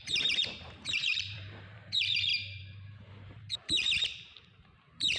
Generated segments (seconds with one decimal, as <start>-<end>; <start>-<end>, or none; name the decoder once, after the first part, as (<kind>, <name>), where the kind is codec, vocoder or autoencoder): 0.0-5.2 (vocoder, BigVGAN v2)